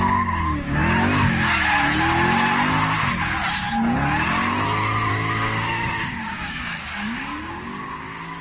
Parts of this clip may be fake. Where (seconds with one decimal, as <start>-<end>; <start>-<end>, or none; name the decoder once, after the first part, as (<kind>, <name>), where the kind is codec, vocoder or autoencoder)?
0.0-0.8 (codec, DAC); 5.1-8.4